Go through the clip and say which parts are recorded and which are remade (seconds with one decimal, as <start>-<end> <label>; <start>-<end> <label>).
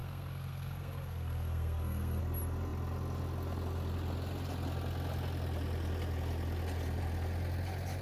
0.0-2.2 remade; 2.2-8.0 recorded